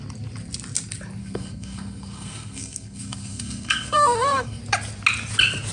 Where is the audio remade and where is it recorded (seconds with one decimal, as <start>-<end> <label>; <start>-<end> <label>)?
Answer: 0.0-1.2 recorded; 1.2-4.6 remade; 4.6-5.7 recorded